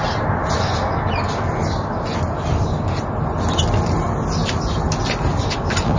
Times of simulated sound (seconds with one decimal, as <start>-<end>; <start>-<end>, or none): none